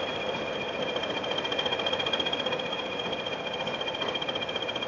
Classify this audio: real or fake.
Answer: real